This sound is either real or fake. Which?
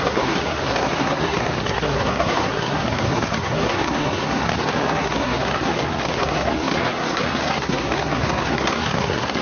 fake